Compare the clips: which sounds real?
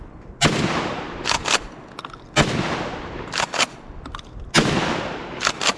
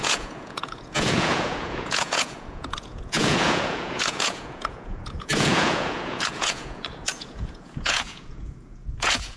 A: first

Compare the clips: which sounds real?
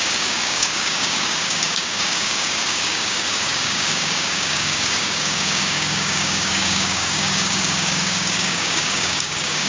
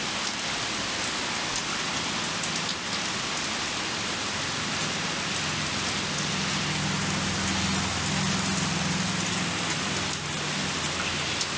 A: second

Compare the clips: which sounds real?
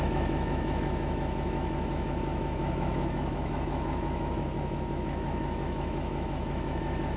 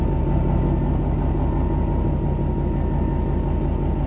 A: second